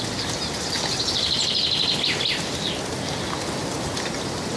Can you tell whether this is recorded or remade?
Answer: recorded